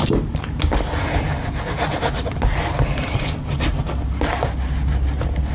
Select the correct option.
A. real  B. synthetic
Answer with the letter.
A